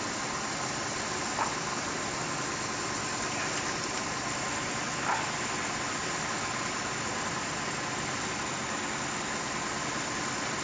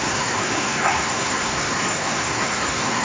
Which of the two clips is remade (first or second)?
second